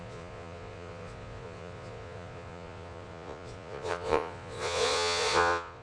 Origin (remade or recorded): remade